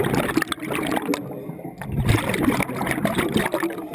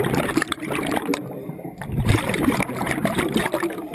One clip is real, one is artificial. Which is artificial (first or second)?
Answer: second